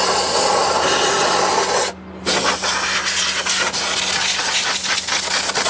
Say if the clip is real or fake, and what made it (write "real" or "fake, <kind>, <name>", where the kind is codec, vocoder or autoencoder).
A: real